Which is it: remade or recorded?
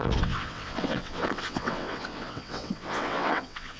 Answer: remade